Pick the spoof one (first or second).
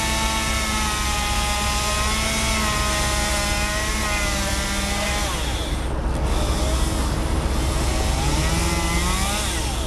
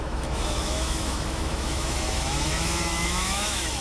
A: second